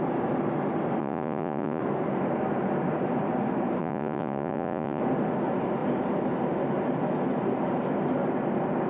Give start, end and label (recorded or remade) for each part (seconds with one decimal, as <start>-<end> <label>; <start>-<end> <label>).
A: 0.0-1.0 recorded; 1.0-1.8 remade; 1.8-3.8 recorded; 3.8-5.0 remade; 5.0-8.9 recorded